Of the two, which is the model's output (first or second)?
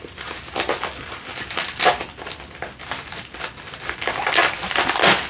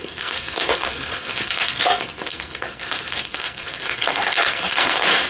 second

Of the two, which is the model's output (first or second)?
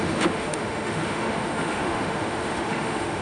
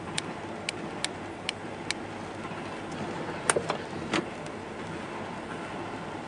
first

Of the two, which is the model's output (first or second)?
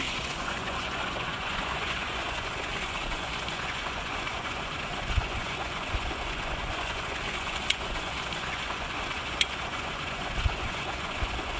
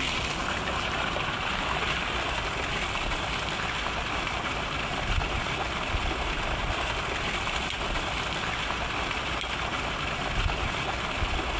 first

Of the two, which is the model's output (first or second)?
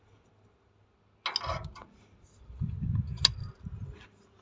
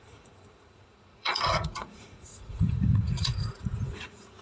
second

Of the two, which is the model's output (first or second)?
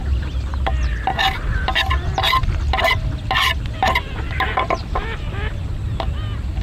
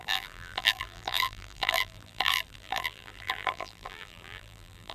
second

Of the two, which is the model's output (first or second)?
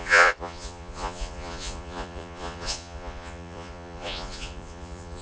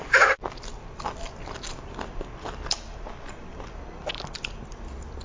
first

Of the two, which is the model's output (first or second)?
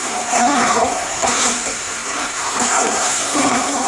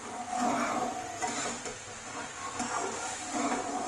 first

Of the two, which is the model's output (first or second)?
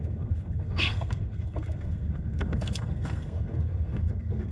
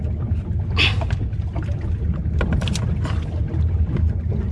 first